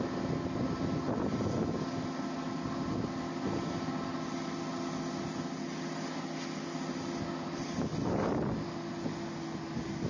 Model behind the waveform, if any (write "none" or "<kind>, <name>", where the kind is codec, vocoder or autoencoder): none